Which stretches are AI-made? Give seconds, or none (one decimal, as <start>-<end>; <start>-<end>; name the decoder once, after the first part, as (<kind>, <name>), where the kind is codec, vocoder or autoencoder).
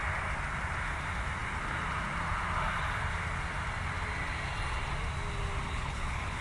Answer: 5.7-6.4 (codec, HILCodec)